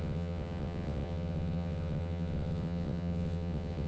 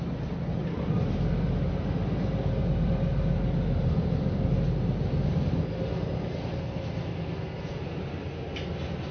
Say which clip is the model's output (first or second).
first